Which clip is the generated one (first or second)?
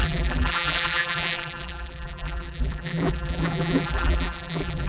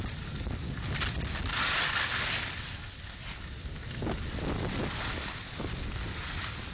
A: first